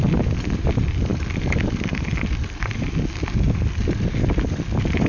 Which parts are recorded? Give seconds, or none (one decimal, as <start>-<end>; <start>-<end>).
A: 0.0-5.1